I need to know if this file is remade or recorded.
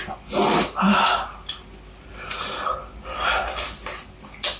recorded